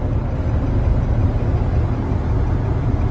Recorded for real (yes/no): yes